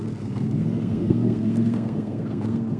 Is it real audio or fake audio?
fake